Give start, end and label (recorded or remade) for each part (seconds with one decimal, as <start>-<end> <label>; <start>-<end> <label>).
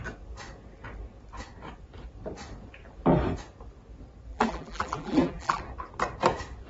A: 0.0-4.3 recorded; 4.3-5.6 remade; 5.6-6.7 recorded